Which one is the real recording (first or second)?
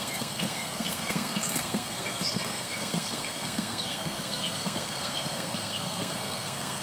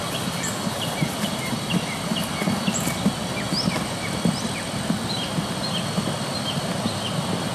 second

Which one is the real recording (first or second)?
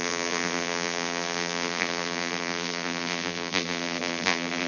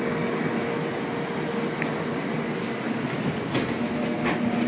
second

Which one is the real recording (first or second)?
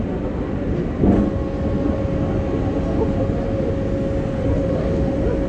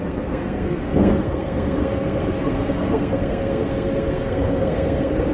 first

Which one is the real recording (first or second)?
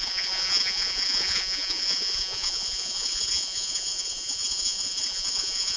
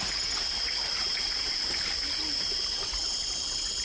second